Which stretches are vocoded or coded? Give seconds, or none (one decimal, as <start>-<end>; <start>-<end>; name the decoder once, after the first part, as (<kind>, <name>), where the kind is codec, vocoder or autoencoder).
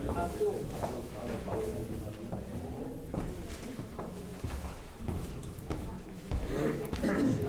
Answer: 0.0-1.8 (autoencoder, DAC-VAE); 3.7-7.5